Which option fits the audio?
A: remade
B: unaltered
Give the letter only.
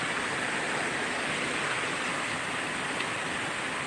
B